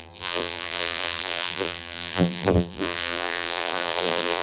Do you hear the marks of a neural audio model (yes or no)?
yes